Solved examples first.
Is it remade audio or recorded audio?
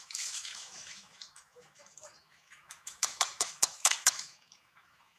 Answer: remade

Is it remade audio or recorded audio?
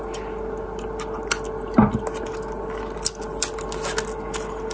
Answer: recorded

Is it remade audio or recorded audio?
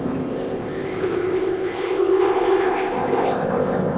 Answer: remade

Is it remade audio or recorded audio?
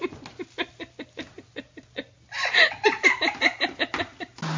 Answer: recorded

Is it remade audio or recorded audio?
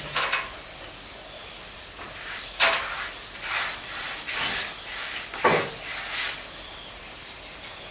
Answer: recorded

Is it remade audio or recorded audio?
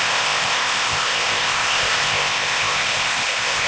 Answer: remade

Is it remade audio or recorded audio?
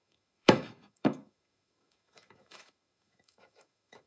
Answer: remade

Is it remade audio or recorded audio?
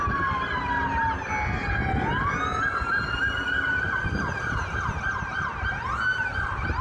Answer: recorded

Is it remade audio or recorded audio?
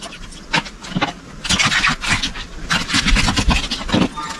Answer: recorded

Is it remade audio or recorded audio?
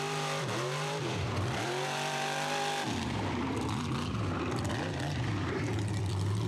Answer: remade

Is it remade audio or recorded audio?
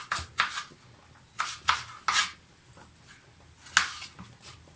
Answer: recorded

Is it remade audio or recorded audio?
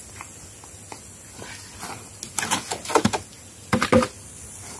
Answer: recorded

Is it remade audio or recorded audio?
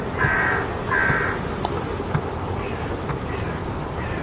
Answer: recorded